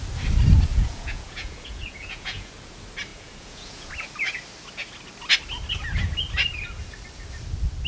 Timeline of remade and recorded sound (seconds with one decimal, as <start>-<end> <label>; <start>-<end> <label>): 0.0-0.7 recorded; 0.7-2.5 remade; 2.5-3.1 recorded; 3.1-3.9 remade; 3.9-7.9 recorded